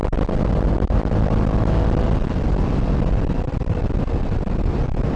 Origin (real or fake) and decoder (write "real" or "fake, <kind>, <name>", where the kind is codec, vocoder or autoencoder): real